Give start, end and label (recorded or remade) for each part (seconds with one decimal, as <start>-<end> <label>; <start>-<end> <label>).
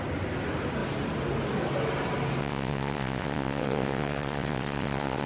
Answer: 0.0-2.4 recorded; 2.4-5.3 remade